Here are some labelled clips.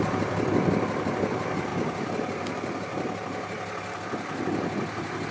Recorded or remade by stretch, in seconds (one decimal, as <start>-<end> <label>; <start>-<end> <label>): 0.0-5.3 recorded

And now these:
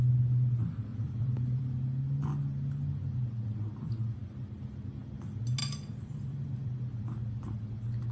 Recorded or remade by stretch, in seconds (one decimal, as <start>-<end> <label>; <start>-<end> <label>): 0.0-0.9 recorded; 0.9-1.6 remade; 1.6-5.6 recorded; 5.6-7.0 remade; 7.0-8.1 recorded

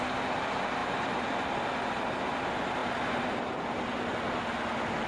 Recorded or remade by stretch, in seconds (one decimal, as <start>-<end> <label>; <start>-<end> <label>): 0.0-0.8 recorded; 0.8-2.2 remade; 2.2-2.8 recorded; 2.8-3.3 remade; 3.3-5.1 recorded

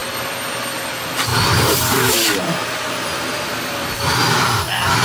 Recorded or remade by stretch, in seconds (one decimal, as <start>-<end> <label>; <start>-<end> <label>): 0.0-0.6 recorded; 0.6-5.0 remade